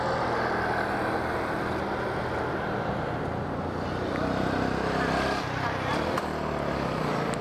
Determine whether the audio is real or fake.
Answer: real